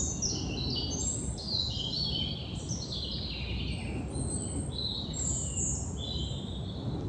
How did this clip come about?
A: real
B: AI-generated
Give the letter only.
A